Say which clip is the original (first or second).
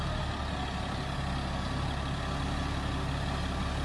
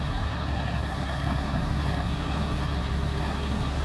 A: first